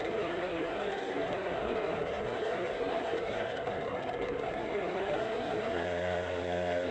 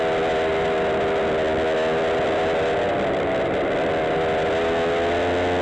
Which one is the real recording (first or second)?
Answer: second